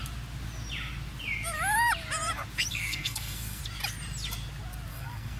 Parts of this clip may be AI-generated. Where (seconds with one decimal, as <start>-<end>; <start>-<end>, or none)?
2.7-3.6; 4.9-5.4